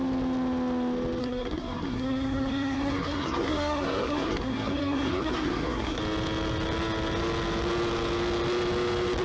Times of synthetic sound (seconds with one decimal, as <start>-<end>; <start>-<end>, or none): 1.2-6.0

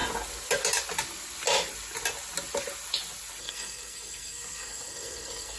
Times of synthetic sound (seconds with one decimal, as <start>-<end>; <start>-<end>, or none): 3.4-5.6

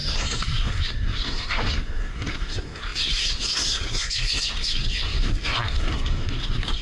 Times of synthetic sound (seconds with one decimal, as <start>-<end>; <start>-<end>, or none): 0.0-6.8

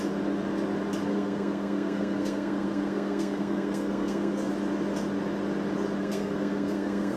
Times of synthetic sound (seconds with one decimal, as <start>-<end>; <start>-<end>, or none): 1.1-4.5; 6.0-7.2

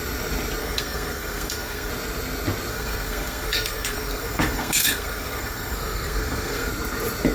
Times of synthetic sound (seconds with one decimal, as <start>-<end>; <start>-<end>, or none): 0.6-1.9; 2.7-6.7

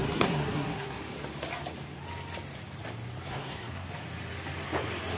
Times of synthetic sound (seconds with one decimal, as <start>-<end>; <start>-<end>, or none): 0.0-1.0; 3.3-3.9